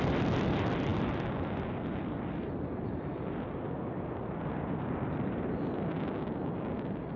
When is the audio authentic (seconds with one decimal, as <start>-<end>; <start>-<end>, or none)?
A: 0.9-2.2